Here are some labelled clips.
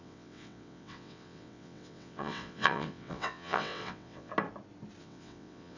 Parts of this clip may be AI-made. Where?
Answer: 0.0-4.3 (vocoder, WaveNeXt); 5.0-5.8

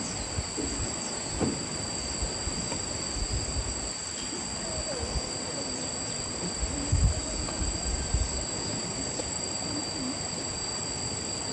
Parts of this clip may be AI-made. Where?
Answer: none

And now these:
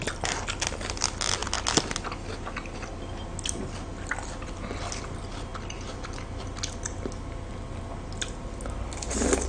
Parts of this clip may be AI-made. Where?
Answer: none

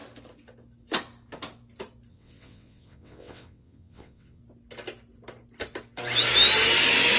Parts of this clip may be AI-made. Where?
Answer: 2.1-4.4 (vocoder, WaveNeXt)

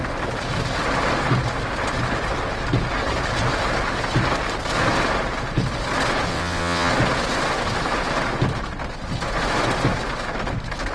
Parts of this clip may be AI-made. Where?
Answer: 6.3-6.9 (vocoder, WaveNeXt)

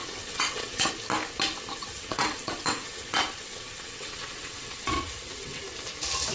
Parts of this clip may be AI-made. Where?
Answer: 0.0-0.9 (vocoder, WaveNeXt); 1.8-5.6

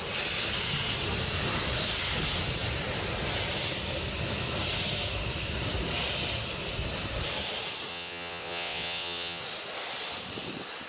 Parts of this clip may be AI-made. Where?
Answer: 7.9-9.4 (vocoder, WaveNeXt)